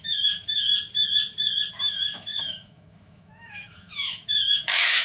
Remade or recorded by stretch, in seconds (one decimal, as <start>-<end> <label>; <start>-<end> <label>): 0.0-0.7 remade; 0.7-1.7 recorded; 1.7-5.0 remade